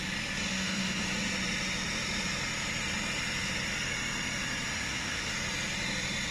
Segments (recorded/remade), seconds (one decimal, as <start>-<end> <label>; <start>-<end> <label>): 0.0-0.5 recorded; 0.5-1.0 remade; 1.0-4.7 recorded; 4.7-5.3 remade; 5.3-6.3 recorded